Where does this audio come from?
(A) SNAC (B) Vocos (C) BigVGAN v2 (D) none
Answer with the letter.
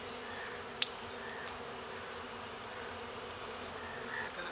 D